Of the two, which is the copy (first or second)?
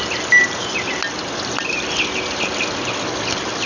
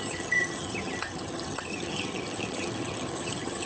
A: second